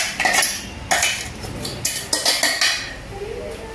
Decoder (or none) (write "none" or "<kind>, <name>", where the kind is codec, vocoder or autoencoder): none